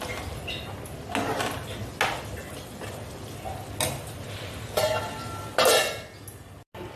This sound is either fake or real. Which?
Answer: real